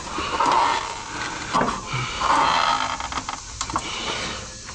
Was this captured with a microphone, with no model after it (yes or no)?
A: yes